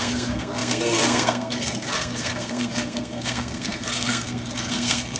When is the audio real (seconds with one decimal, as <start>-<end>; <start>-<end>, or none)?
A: none